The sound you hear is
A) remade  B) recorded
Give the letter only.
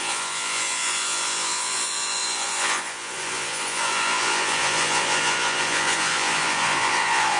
A